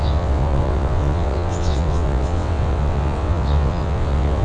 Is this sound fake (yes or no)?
yes